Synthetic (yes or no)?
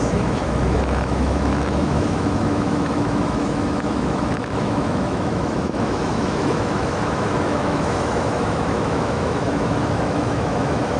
yes